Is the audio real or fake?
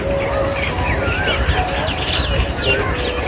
real